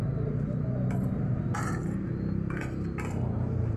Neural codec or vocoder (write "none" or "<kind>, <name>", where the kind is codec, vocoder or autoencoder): none